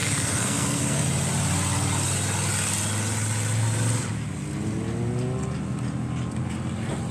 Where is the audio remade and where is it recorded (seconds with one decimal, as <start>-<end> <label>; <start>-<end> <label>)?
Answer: 0.0-1.0 remade; 1.0-7.1 recorded